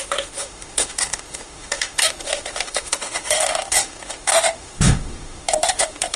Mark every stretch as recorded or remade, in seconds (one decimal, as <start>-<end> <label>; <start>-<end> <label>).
0.0-6.2 remade